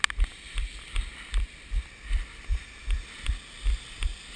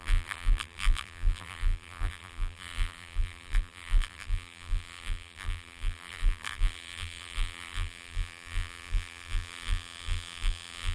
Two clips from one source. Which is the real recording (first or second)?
first